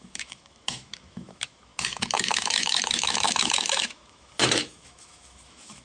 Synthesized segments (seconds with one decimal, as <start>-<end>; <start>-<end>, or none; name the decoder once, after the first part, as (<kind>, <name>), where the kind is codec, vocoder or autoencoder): 0.0-5.8 (autoencoder, DAC-VAE)